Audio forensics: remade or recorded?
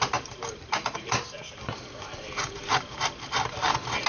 recorded